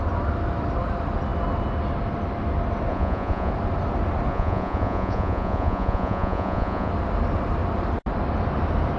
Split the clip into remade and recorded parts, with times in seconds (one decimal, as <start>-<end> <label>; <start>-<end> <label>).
0.0-2.9 recorded; 2.9-3.5 remade; 3.5-4.3 recorded; 4.3-6.9 remade; 6.9-9.0 recorded

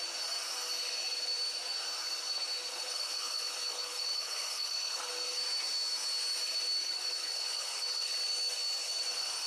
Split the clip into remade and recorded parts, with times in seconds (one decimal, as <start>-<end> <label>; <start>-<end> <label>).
0.0-2.7 recorded; 2.7-5.1 remade; 5.1-6.8 recorded; 6.8-8.1 remade; 8.1-9.5 recorded

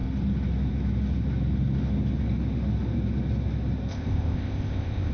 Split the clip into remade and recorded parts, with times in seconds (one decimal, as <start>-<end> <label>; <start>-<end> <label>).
0.0-3.9 recorded; 3.9-5.1 remade

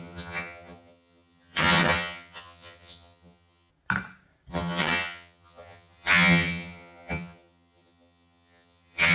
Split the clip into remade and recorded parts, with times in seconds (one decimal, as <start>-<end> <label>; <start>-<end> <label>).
0.0-3.7 remade; 3.7-4.5 recorded; 4.5-9.1 remade

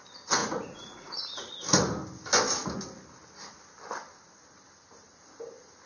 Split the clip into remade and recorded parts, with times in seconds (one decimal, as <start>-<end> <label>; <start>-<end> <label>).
0.0-0.4 recorded; 0.4-1.2 remade; 1.2-5.9 recorded

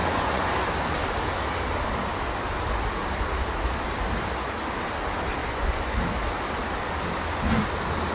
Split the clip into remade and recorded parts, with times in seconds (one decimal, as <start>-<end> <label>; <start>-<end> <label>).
0.0-0.5 remade; 0.5-5.4 recorded; 5.4-6.0 remade; 6.0-8.1 recorded

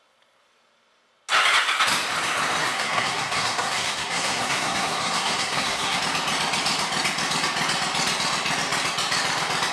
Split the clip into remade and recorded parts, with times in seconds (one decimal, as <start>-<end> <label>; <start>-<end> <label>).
0.0-2.6 recorded; 2.6-6.0 remade; 6.0-9.7 recorded

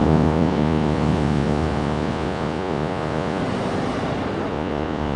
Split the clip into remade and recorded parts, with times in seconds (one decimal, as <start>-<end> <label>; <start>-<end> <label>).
0.0-3.4 remade; 3.4-4.5 recorded; 4.5-5.2 remade